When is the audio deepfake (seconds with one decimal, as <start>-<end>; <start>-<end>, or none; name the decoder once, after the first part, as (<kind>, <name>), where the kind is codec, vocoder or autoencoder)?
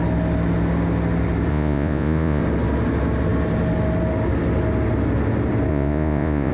1.5-2.4 (vocoder, Vocos); 5.7-6.5